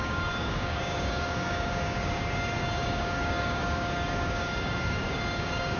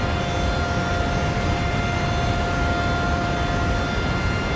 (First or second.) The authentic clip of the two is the second